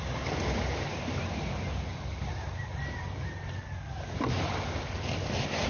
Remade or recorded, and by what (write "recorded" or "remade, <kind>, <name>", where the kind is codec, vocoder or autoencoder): recorded